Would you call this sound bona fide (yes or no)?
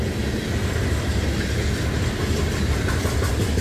yes